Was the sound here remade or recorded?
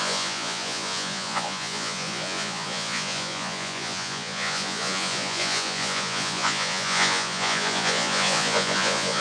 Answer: remade